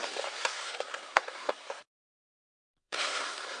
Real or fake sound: fake